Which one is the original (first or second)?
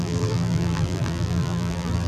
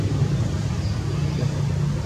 second